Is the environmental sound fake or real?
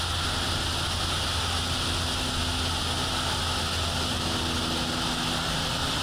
real